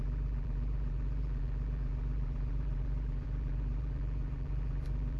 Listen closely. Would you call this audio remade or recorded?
remade